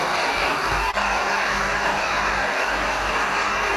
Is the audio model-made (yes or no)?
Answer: yes